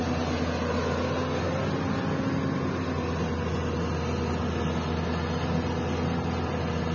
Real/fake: real